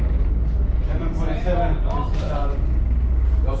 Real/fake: real